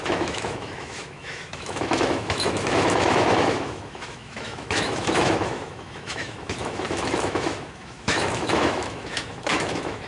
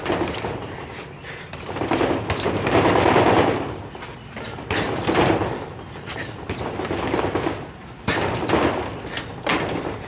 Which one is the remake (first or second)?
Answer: first